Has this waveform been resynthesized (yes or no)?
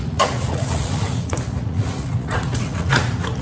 yes